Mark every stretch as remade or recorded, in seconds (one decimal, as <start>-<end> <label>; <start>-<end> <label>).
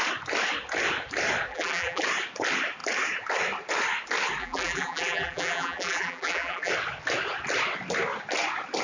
0.0-1.5 recorded; 1.5-2.0 remade; 2.0-4.4 recorded; 4.4-6.7 remade; 6.7-8.8 recorded